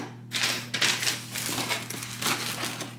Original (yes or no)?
yes